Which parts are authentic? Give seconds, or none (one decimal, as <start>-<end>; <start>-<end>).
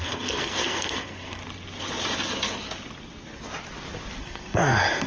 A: 1.4-4.2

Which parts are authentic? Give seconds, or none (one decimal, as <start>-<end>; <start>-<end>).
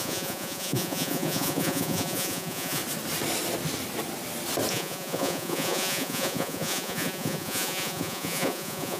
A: 2.8-4.7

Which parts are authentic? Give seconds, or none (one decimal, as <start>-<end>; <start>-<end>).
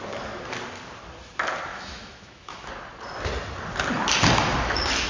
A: 0.0-1.7; 2.7-5.1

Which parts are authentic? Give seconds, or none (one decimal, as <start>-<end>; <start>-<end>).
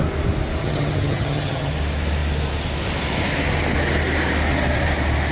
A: 0.0-0.6; 1.7-5.3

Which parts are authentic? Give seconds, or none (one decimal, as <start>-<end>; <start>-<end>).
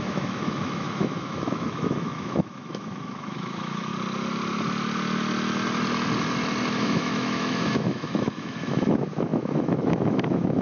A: 3.9-6.7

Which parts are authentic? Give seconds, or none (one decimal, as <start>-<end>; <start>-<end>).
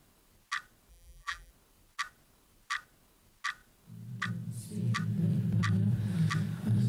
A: 0.0-0.9; 1.5-6.9